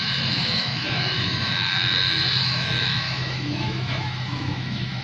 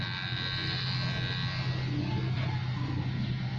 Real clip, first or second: second